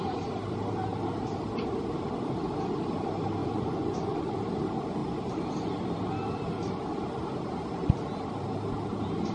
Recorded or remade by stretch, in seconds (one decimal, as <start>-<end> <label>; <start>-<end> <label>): 0.0-3.4 recorded; 3.4-4.4 remade; 4.4-9.3 recorded

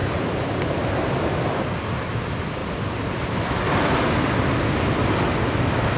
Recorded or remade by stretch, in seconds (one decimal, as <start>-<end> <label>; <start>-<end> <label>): 0.0-0.6 remade; 0.6-2.6 recorded; 2.6-4.4 remade; 4.4-6.0 recorded

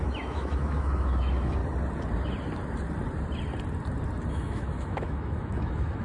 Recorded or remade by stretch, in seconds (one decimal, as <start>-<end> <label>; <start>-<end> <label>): 0.0-1.6 remade; 1.6-4.3 recorded; 4.3-6.0 remade

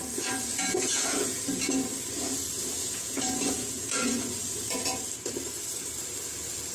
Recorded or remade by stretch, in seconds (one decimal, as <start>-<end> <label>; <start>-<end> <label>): 0.0-0.5 recorded; 0.5-1.4 remade; 1.4-2.8 recorded; 2.8-4.2 remade; 4.2-6.7 recorded